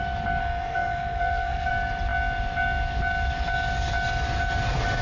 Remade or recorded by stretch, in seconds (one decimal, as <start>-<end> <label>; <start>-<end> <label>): 0.0-0.4 recorded; 0.4-1.7 remade; 1.7-5.0 recorded